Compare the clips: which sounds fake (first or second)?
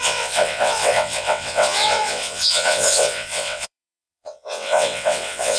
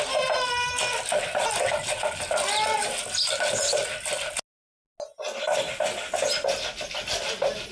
first